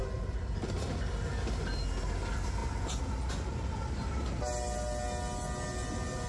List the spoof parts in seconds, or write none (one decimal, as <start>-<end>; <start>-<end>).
none